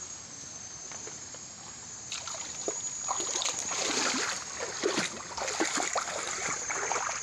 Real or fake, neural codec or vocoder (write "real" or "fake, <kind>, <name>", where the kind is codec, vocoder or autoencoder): real